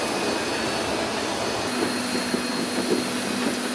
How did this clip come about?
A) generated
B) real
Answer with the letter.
B